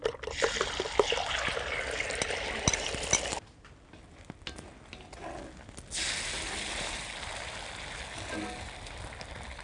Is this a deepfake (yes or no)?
no